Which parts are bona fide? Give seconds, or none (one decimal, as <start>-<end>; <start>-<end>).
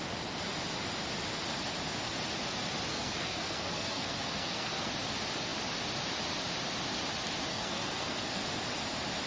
0.0-2.9; 4.9-7.5; 8.4-9.3